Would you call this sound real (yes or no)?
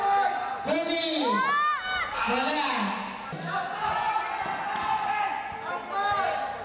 yes